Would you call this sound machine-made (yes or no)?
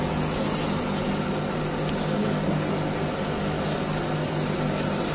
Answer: no